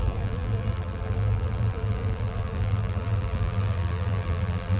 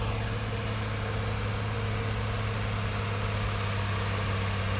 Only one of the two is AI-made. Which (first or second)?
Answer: first